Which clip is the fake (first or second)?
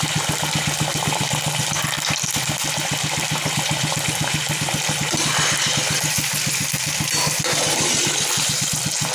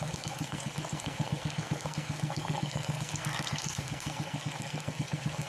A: second